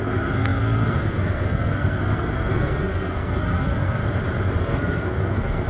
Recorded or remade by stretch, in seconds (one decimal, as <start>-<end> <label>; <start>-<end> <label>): 0.0-4.0 remade; 4.0-4.6 recorded; 4.6-5.7 remade